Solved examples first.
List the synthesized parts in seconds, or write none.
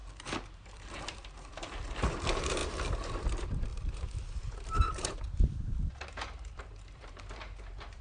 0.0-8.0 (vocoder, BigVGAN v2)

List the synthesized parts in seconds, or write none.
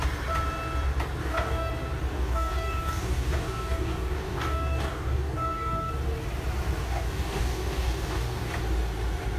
1.2-1.7 (codec, DAC); 2.1-5.9; 6.8-8.5